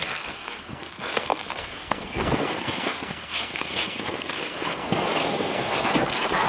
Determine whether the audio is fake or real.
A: fake